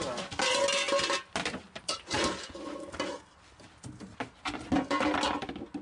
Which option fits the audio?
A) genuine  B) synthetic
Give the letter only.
A